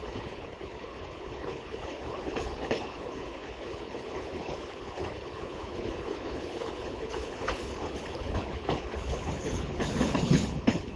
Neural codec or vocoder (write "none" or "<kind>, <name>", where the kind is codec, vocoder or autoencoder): codec, HILCodec